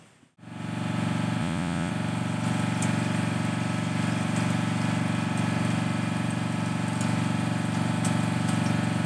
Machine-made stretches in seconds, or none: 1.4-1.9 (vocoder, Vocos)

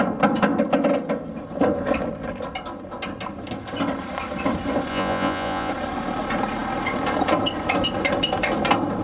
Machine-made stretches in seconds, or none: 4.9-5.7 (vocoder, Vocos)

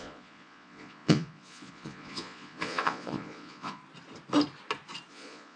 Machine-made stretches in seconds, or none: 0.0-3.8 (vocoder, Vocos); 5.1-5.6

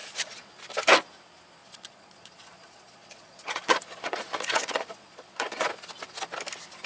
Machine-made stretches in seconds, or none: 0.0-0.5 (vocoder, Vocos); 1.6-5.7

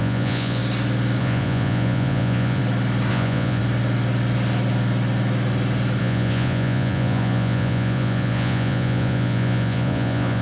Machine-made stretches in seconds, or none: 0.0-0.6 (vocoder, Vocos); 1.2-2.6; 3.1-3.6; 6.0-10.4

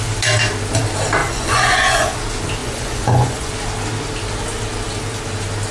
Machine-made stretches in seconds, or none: 1.2-2.2 (vocoder, Vocos); 2.6-3.5

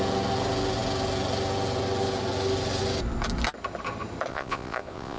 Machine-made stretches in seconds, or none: 4.3-5.2 (vocoder, Vocos)

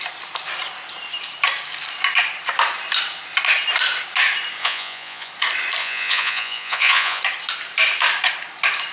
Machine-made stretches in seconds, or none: 4.6-5.3 (vocoder, Vocos); 5.8-7.2